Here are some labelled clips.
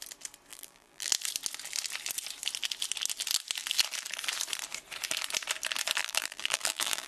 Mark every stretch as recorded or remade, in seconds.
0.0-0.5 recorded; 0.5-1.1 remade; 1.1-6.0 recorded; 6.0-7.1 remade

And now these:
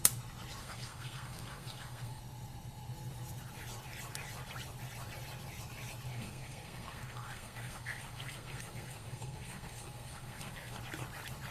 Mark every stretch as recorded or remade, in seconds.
0.0-0.6 recorded; 0.6-2.2 remade; 2.2-6.1 recorded; 6.1-10.8 remade; 10.8-11.5 recorded

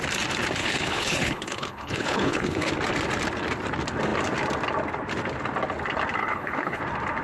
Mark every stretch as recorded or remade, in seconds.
0.0-0.6 recorded; 0.6-2.7 remade; 2.7-6.2 recorded; 6.2-6.8 remade; 6.8-7.2 recorded

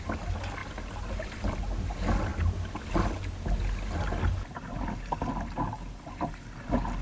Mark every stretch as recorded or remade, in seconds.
0.0-7.0 recorded

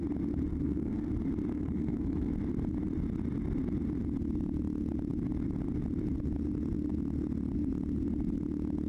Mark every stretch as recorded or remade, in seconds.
0.0-0.5 recorded; 0.5-1.1 remade; 1.1-1.5 recorded; 1.5-2.3 remade; 2.3-8.9 recorded